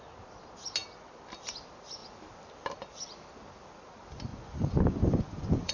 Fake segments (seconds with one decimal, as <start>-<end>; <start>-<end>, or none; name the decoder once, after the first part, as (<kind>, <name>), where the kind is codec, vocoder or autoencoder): 4.3-5.7 (vocoder, Vocos)